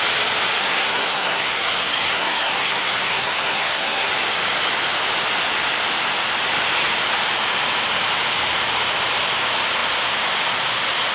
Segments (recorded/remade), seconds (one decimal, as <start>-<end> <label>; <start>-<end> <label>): 0.0-0.6 recorded; 0.6-4.1 remade; 4.1-11.1 recorded